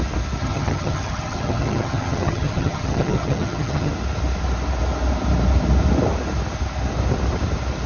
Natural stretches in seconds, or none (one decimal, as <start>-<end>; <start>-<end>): 0.0-0.4; 3.9-7.9